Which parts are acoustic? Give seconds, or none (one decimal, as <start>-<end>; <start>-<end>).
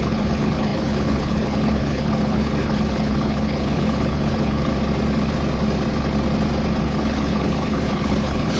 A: 4.7-6.8